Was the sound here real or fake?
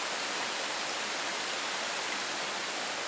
real